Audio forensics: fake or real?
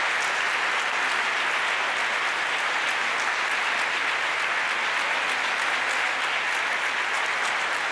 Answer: real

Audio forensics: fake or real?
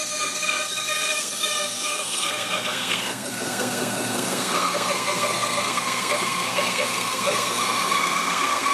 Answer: fake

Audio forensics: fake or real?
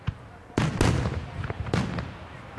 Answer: real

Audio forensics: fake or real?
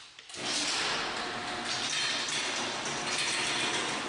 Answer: real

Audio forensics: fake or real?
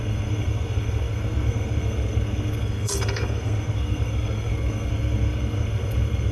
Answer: fake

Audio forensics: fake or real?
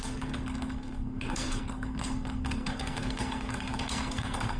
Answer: fake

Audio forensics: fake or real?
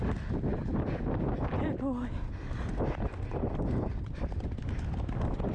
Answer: real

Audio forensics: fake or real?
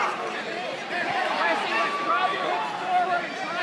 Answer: real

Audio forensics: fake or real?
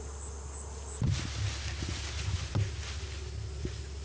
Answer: real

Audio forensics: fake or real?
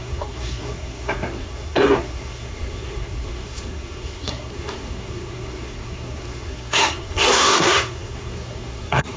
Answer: fake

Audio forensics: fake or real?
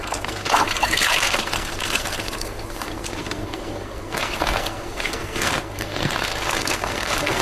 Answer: fake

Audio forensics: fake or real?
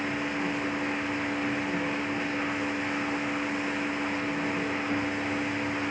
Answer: real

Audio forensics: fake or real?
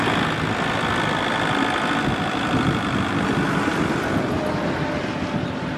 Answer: real